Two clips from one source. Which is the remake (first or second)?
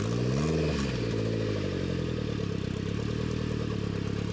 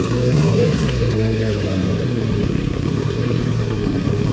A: second